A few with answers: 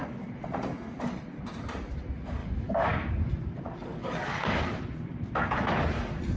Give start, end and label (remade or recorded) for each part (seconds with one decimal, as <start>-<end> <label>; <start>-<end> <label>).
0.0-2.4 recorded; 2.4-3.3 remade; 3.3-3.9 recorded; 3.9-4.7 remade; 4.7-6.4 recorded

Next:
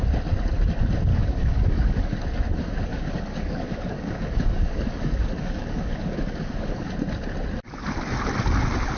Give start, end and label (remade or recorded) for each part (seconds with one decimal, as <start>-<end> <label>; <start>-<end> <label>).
0.0-1.1 recorded; 1.1-2.2 remade; 2.2-2.9 recorded; 2.9-6.9 remade; 6.9-9.0 recorded

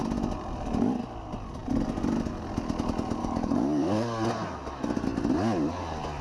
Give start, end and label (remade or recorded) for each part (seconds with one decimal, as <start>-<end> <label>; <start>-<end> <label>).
0.0-3.2 recorded; 3.2-4.3 remade; 4.3-6.2 recorded

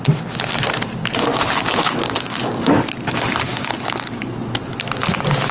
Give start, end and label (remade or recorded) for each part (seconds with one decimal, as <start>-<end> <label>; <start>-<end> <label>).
0.0-1.3 recorded; 1.3-2.8 remade; 2.8-3.5 recorded; 3.5-4.2 remade; 4.2-5.5 recorded